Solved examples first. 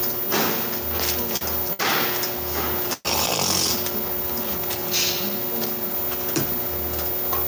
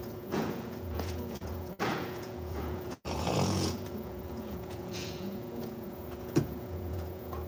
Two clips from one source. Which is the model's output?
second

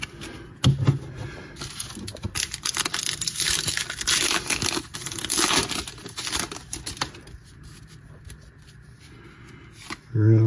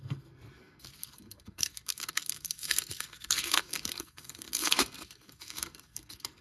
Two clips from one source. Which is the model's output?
second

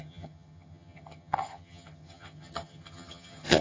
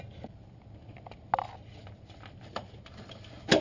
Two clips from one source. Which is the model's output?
first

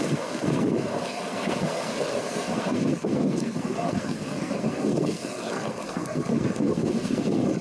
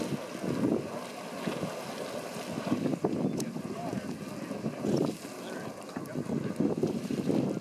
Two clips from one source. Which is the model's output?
first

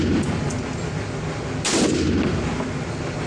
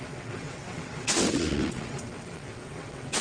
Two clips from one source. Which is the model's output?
second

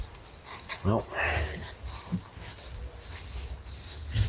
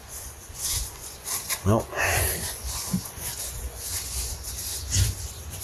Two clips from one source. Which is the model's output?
second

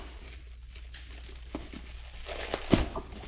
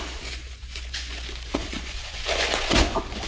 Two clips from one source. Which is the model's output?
second